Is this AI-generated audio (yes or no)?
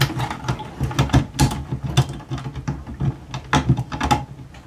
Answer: no